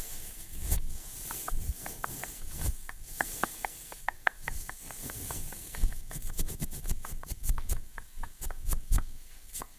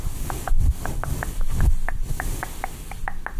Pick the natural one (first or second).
second